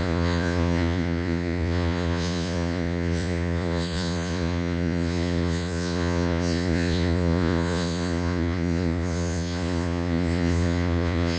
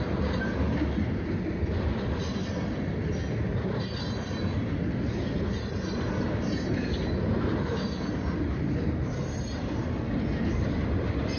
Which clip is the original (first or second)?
second